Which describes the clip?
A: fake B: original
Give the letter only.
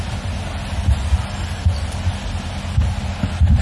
B